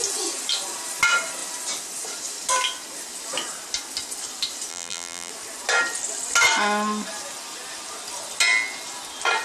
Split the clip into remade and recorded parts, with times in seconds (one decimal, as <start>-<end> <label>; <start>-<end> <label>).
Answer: 0.0-4.7 recorded; 4.7-5.3 remade; 5.3-9.4 recorded